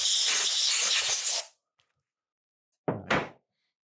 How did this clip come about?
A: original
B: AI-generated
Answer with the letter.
A